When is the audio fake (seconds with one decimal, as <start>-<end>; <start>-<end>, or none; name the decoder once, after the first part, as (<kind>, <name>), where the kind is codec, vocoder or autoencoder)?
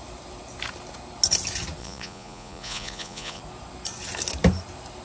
1.8-3.4 (vocoder, Vocos)